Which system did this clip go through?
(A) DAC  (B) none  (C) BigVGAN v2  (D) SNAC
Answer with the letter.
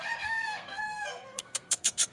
D